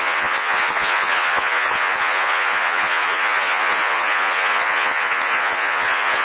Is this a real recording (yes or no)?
no